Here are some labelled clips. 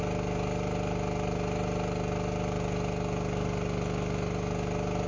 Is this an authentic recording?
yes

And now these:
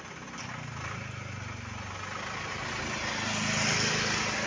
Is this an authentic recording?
yes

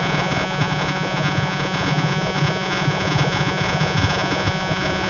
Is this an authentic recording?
no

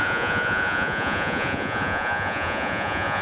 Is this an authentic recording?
no